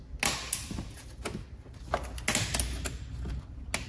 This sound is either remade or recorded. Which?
recorded